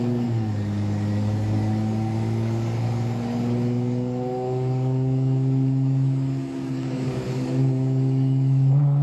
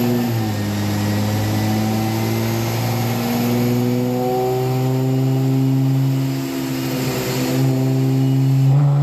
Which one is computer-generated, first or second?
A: first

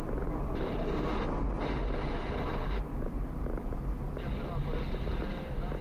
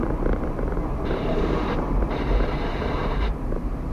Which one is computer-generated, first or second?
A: second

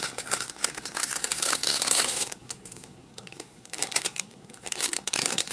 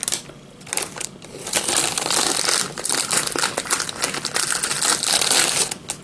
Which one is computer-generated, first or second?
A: first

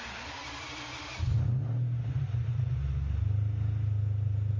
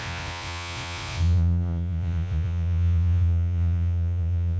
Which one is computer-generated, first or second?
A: second